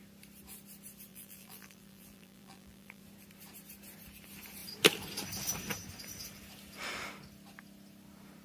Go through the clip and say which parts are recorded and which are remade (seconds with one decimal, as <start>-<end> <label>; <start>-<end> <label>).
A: 0.0-1.1 recorded; 1.1-3.0 remade; 3.0-8.4 recorded